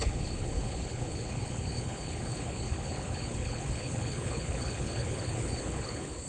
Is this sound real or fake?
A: fake